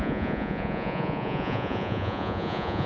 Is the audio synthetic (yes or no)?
yes